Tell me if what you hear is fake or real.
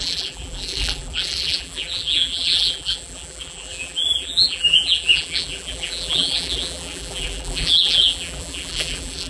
fake